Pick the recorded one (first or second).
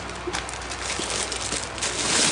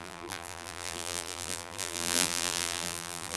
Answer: first